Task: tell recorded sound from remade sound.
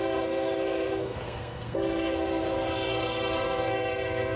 remade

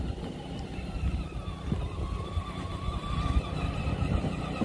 recorded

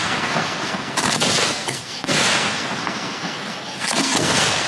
remade